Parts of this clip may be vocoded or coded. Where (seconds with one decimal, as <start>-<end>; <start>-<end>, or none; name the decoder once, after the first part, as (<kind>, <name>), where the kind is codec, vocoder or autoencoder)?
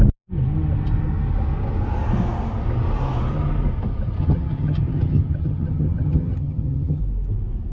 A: 4.2-7.0 (vocoder, HiFi-GAN)